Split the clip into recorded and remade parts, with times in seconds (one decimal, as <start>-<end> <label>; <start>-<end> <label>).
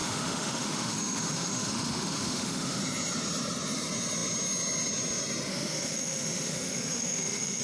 0.0-2.8 remade; 2.8-5.5 recorded; 5.5-7.6 remade